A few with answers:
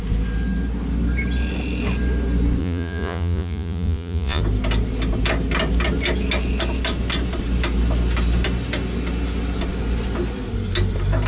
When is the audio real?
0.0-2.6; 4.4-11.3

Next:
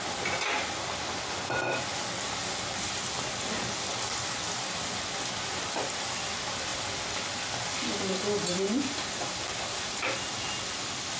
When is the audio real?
0.0-11.2